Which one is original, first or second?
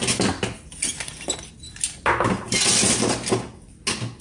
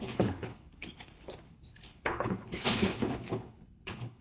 first